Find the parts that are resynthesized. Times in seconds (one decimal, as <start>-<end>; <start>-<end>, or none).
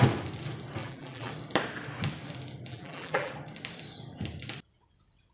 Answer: 0.8-1.3; 2.7-3.3